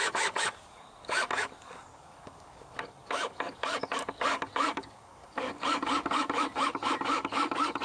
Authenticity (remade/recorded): remade